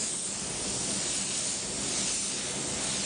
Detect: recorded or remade recorded